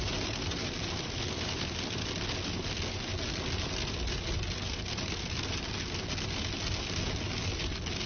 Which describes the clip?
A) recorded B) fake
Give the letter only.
A